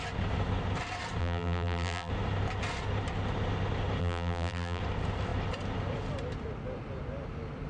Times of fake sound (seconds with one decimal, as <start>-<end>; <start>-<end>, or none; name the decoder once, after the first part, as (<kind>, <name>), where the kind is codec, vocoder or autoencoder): 1.2-2.1 (vocoder, BigVGAN v2); 4.0-4.8